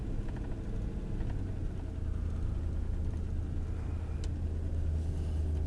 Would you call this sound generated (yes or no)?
no